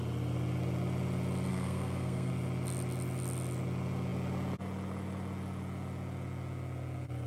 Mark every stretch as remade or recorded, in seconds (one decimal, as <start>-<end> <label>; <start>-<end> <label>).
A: 0.0-1.5 recorded; 1.5-2.3 remade; 2.3-7.3 recorded